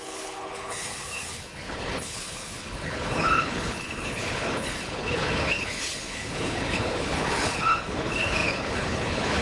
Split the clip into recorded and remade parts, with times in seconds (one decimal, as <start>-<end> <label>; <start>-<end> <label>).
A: 0.0-9.4 remade